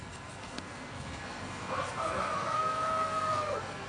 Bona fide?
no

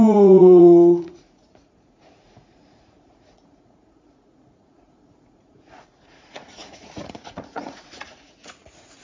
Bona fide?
no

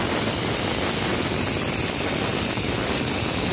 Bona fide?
yes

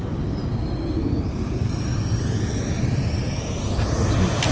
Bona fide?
yes